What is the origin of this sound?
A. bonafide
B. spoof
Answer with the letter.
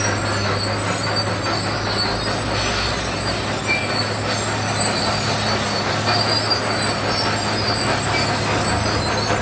A